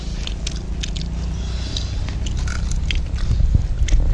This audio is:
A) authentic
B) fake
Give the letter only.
A